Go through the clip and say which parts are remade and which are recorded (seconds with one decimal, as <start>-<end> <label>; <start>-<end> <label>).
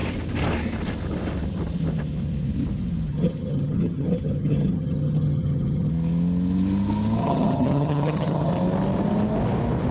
0.0-3.1 recorded; 3.1-5.9 remade; 5.9-7.2 recorded; 7.2-8.5 remade; 8.5-9.9 recorded